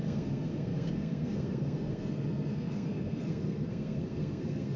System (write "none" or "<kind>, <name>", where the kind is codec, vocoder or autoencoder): codec, SNAC